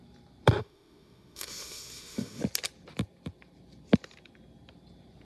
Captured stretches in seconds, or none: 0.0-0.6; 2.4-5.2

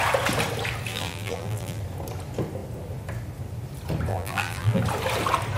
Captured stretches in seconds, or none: 0.0-0.9; 1.8-4.1; 4.8-5.6

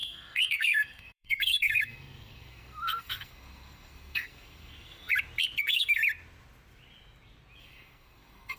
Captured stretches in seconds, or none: 5.1-5.6; 6.0-7.6

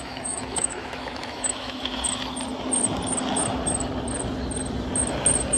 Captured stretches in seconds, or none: 1.9-5.6

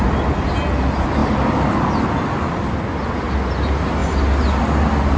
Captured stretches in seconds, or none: 0.0-5.2

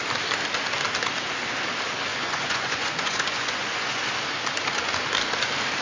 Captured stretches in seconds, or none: 0.0-2.1; 4.0-5.8